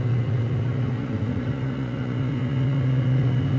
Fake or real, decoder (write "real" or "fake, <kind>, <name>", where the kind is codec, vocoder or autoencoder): fake, vocoder, Vocos